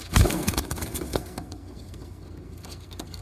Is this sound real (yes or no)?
no